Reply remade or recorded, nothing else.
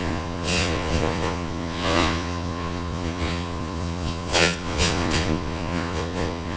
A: remade